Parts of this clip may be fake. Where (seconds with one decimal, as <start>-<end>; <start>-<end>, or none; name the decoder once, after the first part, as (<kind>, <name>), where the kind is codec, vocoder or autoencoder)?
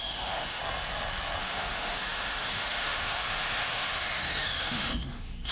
0.0-0.6 (autoencoder, DAC-VAE); 1.4-5.5